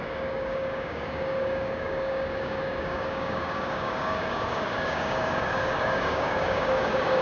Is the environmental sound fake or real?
fake